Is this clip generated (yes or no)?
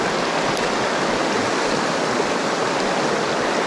no